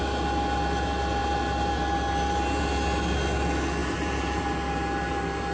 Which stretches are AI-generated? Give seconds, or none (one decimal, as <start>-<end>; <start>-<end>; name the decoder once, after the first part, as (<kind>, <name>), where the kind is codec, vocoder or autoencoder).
3.8-4.4 (vocoder, BigVGAN v2)

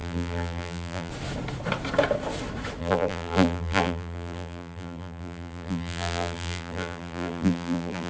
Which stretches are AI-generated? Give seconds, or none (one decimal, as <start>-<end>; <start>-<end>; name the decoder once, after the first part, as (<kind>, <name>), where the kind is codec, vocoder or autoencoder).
0.0-1.1 (vocoder, BigVGAN v2); 2.8-8.1

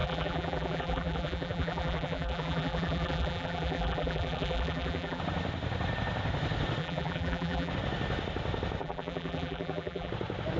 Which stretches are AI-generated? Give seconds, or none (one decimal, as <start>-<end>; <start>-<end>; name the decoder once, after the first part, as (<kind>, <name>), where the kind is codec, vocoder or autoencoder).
0.0-5.2 (vocoder, BigVGAN v2); 6.8-7.7; 8.8-10.1

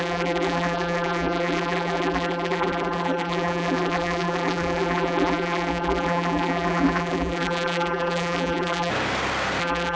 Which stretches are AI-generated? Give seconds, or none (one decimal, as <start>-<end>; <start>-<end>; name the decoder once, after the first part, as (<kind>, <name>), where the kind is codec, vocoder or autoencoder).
0.0-8.9 (vocoder, BigVGAN v2); 9.6-10.0